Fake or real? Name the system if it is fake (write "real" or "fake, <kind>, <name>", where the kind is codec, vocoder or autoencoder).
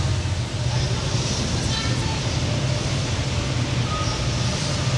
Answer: fake, vocoder, BigVGAN v2